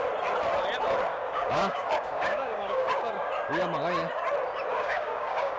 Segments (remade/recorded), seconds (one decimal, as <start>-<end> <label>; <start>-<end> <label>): 0.0-1.1 recorded; 1.1-3.3 remade; 3.3-4.7 recorded; 4.7-5.6 remade